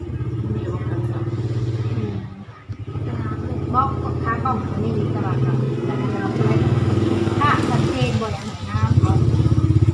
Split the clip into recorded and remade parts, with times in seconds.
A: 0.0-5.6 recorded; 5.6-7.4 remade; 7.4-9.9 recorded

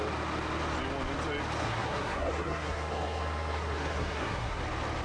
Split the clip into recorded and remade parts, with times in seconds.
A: 0.0-1.6 recorded; 1.6-4.6 remade; 4.6-5.0 recorded

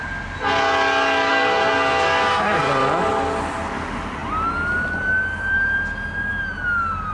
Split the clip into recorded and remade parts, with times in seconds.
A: 0.0-1.3 recorded; 1.3-2.6 remade; 2.6-7.1 recorded

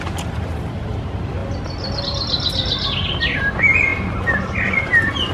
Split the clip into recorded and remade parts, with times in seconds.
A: 0.0-5.3 recorded

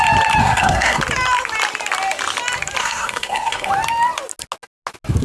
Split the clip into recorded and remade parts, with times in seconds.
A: 0.0-0.4 recorded; 0.4-1.0 remade; 1.0-2.8 recorded; 2.8-3.7 remade; 3.7-5.2 recorded

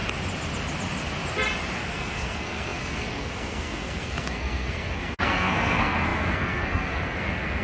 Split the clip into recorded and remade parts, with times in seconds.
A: 0.0-1.9 recorded; 1.9-7.6 remade